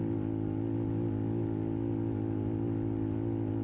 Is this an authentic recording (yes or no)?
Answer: yes